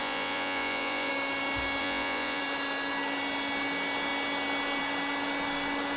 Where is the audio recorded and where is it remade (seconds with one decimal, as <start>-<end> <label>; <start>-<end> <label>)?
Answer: 0.0-1.1 remade; 1.1-1.8 recorded; 1.8-2.4 remade; 2.4-6.0 recorded